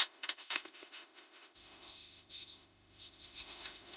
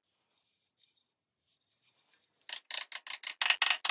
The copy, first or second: first